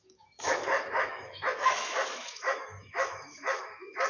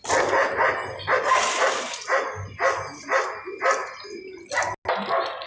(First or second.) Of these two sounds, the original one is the second